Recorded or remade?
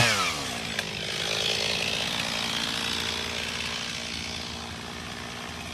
recorded